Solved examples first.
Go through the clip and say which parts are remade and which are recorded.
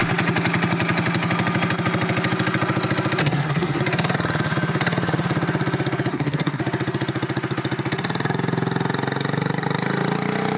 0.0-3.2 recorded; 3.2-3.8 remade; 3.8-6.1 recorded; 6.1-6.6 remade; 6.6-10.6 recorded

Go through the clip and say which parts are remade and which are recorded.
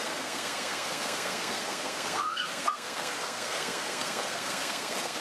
0.0-5.2 remade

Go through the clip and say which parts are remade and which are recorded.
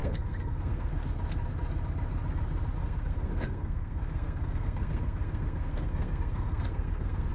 0.0-0.9 remade; 0.9-2.8 recorded; 2.8-7.3 remade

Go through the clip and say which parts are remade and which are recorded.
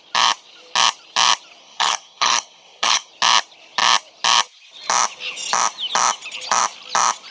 0.0-1.6 recorded; 1.6-3.1 remade; 3.1-7.3 recorded